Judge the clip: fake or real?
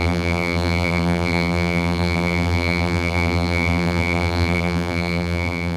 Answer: fake